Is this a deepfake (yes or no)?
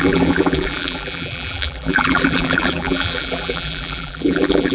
yes